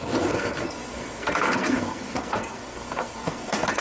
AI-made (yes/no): yes